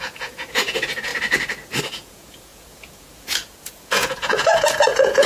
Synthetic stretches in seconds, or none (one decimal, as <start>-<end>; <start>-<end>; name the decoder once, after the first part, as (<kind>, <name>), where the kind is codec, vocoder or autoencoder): 0.0-1.1 (vocoder, Vocos); 1.8-5.3